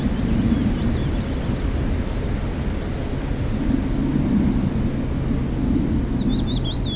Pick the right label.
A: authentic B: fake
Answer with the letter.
A